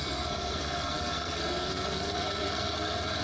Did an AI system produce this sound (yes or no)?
yes